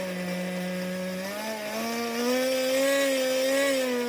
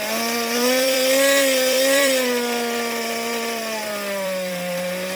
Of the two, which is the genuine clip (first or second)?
first